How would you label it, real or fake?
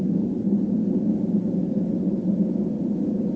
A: real